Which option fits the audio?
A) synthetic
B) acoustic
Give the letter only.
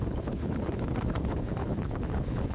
A